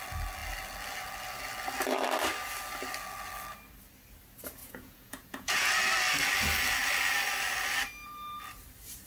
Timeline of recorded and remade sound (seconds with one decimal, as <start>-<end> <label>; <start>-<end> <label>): 0.0-4.6 recorded; 4.6-5.7 remade; 5.7-9.1 recorded